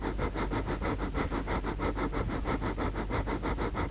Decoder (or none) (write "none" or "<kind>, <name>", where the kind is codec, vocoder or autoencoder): none